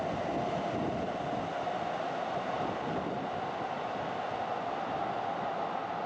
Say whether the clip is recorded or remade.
recorded